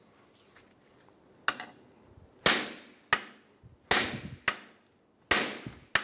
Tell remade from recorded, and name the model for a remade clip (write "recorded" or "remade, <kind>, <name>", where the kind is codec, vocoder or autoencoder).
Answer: recorded